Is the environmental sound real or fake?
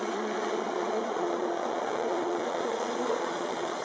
fake